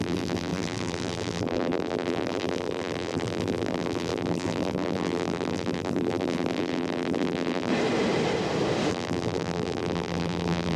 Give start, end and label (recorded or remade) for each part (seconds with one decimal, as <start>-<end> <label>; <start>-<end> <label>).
0.0-7.7 remade; 7.7-8.9 recorded; 8.9-10.8 remade